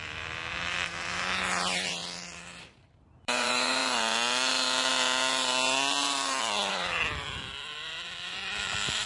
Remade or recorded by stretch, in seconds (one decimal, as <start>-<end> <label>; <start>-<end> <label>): 0.0-2.0 remade; 2.0-2.6 recorded; 2.6-3.8 remade; 3.8-6.7 recorded; 6.7-9.1 remade